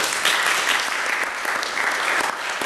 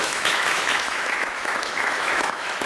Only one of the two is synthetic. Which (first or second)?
second